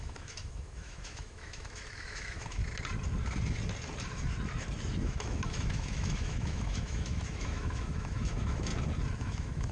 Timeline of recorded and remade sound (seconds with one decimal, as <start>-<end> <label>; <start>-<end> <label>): 0.0-2.6 remade; 2.6-5.0 recorded; 5.0-8.7 remade; 8.7-9.2 recorded; 9.2-9.7 remade